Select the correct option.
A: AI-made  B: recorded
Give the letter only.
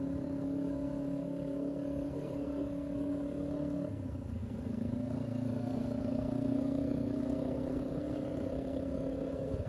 A